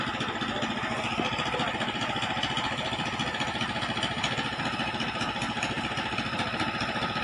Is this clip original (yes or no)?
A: yes